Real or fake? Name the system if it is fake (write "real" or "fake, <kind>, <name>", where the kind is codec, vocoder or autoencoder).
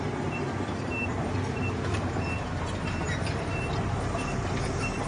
fake, vocoder, BigVGAN v2